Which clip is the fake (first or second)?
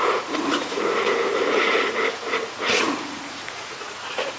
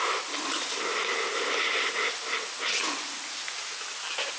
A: first